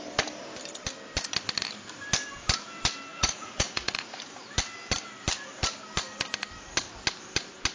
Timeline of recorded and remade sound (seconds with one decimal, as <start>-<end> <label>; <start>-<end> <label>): 0.0-3.1 recorded; 3.1-4.2 remade; 4.2-7.7 recorded